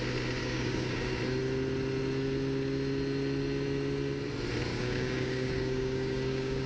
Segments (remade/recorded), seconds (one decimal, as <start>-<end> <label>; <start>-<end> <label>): 0.0-0.4 recorded; 0.4-1.2 remade; 1.2-4.7 recorded; 4.7-6.7 remade